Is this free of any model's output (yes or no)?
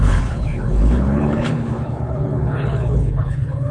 no